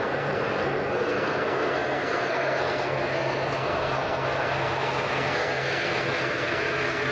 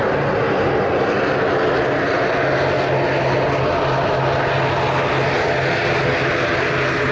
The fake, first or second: first